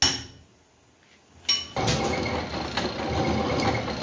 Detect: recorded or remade recorded